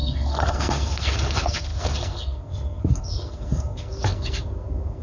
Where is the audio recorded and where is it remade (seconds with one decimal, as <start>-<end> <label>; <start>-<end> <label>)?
0.0-5.0 remade